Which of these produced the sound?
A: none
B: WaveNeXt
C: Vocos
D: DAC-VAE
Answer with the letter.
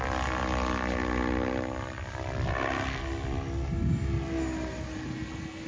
A